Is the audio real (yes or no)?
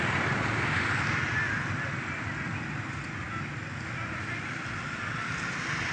yes